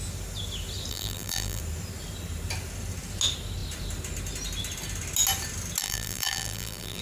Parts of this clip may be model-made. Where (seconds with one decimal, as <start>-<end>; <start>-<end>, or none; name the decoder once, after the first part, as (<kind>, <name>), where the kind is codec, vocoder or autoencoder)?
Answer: 0.9-1.6 (vocoder, BigVGAN v2); 5.8-7.0